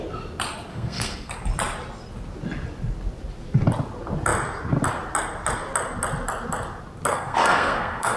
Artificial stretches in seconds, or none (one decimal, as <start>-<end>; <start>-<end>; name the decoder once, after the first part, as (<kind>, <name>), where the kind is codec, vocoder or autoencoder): 0.7-1.3 (codec, SNAC); 7.1-8.2